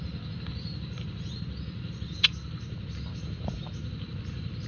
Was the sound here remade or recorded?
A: recorded